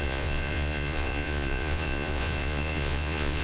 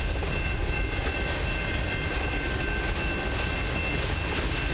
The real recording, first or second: second